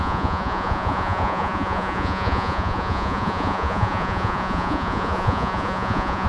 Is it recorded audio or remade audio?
remade